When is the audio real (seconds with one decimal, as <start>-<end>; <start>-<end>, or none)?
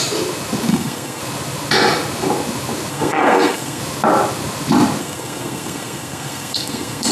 0.0-0.7; 1.2-2.9; 3.8-5.0